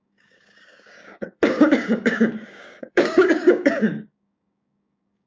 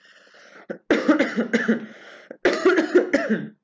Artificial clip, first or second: first